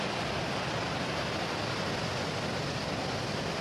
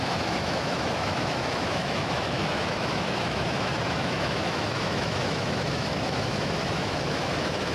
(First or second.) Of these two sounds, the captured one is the first